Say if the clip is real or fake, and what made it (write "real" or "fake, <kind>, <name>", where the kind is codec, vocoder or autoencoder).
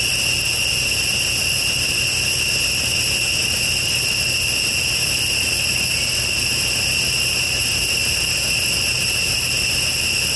real